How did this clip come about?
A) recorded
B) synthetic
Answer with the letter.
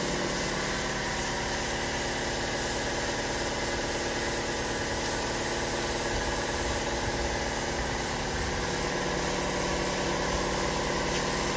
A